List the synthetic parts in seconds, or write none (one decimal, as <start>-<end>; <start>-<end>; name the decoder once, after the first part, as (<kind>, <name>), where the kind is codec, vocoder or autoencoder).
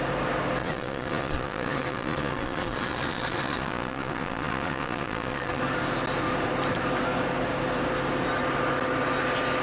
0.6-5.6 (vocoder, Vocos)